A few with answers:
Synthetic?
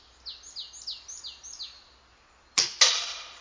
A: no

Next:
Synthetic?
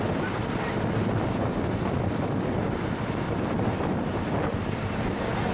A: no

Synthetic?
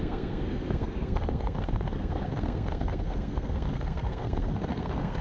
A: yes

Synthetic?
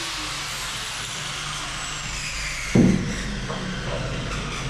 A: no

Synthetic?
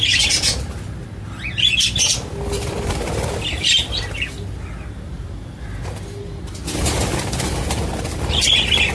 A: no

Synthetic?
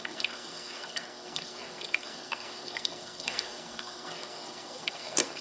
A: yes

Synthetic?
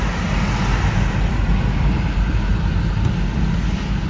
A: no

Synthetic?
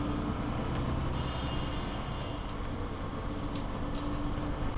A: no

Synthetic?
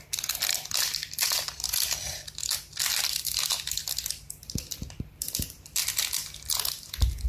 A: no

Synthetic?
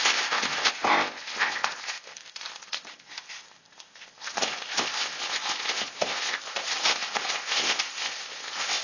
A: yes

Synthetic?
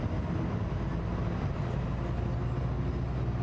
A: no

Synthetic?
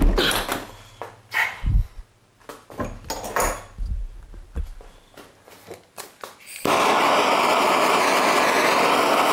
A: no